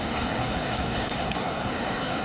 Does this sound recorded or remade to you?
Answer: remade